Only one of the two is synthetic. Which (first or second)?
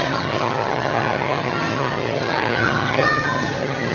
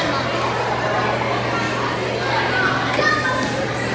first